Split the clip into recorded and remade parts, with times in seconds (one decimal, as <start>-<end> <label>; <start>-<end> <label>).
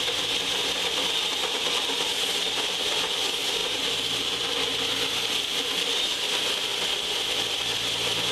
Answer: 0.0-8.3 recorded